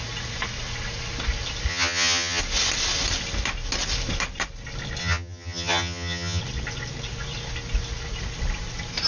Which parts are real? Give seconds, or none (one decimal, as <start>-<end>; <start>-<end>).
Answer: 0.0-1.7; 2.4-5.0; 6.4-9.1